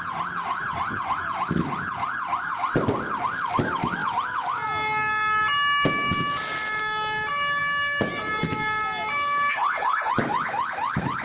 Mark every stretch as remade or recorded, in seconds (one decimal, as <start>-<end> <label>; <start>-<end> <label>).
0.0-9.5 recorded; 9.5-10.1 remade; 10.1-11.2 recorded